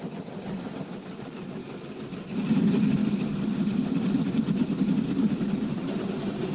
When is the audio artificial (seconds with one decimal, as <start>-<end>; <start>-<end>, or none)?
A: none